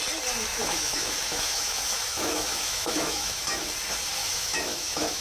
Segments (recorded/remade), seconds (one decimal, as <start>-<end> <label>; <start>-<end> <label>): 0.0-0.5 recorded; 0.5-3.6 remade; 3.6-4.2 recorded; 4.2-5.2 remade